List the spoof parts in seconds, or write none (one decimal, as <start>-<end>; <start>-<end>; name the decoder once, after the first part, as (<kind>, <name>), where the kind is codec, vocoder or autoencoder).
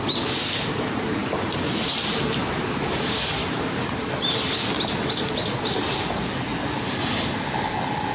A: 1.2-4.5 (vocoder, BigVGAN v2)